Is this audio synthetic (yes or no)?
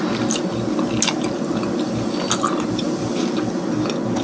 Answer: no